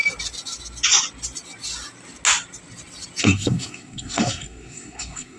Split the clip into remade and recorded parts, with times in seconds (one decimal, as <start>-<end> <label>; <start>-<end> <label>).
0.0-3.2 recorded; 3.2-5.4 remade